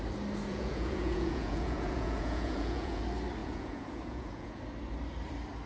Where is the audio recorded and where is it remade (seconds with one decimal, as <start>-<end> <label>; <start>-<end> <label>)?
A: 0.0-0.5 recorded; 0.5-3.0 remade; 3.0-3.4 recorded; 3.4-4.6 remade; 4.6-5.7 recorded